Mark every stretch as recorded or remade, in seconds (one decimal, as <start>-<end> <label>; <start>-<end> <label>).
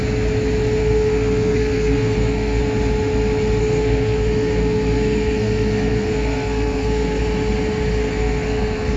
0.0-0.8 recorded; 0.8-2.6 remade; 2.6-3.6 recorded; 3.6-7.2 remade; 7.2-8.0 recorded; 8.0-9.0 remade